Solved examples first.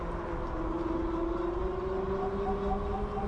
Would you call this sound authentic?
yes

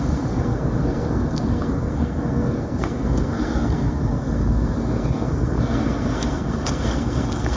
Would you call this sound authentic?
no